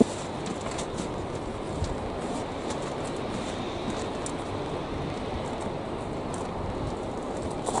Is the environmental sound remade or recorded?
recorded